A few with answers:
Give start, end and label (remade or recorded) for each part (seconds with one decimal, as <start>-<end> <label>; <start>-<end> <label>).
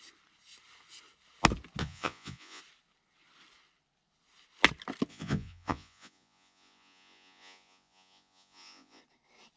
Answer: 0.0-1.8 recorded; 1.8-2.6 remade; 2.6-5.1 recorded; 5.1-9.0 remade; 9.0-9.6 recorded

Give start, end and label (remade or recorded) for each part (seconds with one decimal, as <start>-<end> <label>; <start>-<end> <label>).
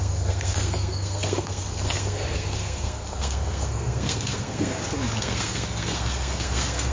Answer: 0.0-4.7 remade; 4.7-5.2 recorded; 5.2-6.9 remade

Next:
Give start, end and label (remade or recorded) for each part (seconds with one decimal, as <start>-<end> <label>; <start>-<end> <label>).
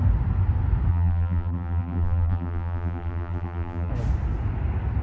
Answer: 0.0-0.9 recorded; 0.9-3.9 remade; 3.9-5.0 recorded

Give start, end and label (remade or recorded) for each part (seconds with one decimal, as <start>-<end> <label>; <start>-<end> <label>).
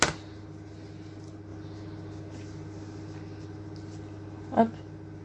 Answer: 0.0-5.2 recorded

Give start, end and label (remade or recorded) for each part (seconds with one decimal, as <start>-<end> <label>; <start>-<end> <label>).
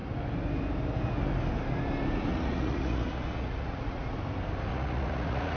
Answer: 0.0-2.3 recorded; 2.3-4.1 remade; 4.1-4.7 recorded; 4.7-5.6 remade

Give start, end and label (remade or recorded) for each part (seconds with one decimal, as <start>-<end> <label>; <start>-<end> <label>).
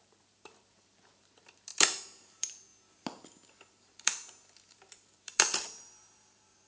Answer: 0.0-2.7 remade; 2.7-3.7 recorded; 3.7-6.7 remade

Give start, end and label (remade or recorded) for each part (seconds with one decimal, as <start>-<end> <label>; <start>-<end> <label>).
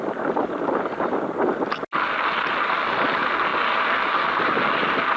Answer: 0.0-5.2 recorded